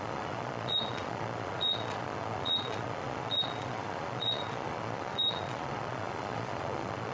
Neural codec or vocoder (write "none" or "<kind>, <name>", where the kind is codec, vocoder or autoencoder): vocoder, Vocos